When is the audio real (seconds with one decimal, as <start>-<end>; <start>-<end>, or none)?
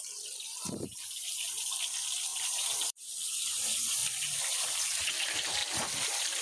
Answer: 0.0-2.3; 3.3-4.0; 4.6-6.4